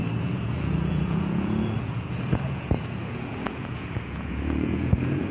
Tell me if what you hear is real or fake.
fake